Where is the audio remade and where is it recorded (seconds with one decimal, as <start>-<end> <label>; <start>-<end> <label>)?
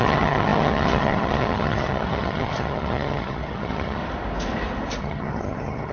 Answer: 0.0-4.0 remade; 4.0-5.0 recorded; 5.0-5.9 remade